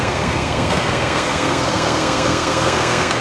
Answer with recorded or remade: remade